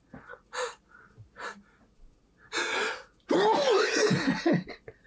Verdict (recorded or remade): recorded